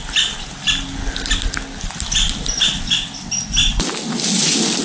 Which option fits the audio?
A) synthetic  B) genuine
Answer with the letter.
B